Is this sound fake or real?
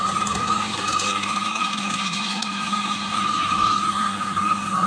fake